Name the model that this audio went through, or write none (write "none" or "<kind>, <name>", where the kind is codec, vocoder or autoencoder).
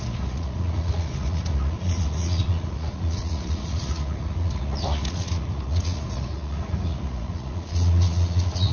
vocoder, Vocos